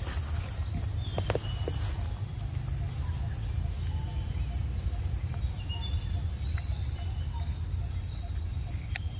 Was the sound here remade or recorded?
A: recorded